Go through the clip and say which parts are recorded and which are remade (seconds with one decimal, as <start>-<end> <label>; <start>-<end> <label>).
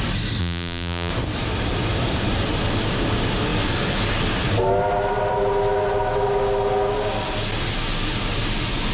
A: 0.0-0.4 recorded; 0.4-1.1 remade; 1.1-8.9 recorded